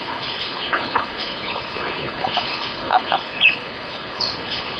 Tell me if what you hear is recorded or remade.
remade